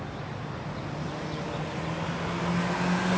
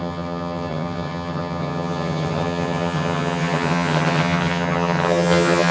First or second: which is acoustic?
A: first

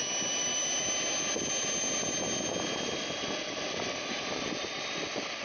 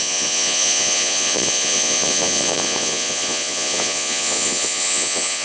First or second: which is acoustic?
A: first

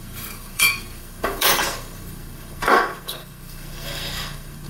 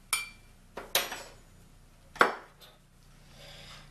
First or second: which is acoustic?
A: second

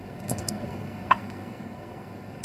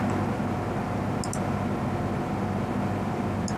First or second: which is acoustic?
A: second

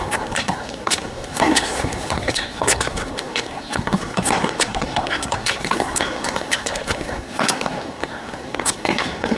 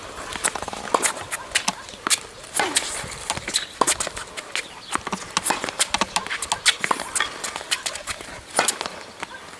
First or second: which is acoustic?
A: second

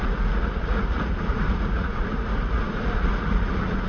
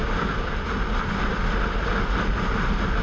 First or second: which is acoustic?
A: second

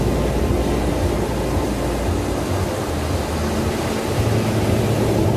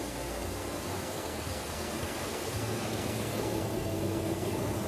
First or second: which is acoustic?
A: first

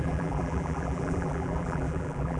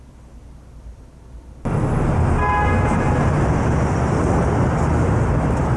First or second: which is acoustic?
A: second